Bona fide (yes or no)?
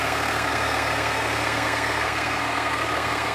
no